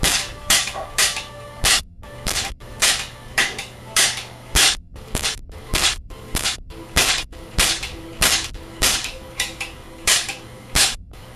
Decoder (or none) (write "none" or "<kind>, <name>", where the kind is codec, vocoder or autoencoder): codec, DAC